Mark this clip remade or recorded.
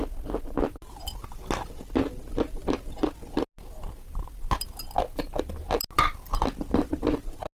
recorded